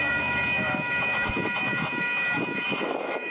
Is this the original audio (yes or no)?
no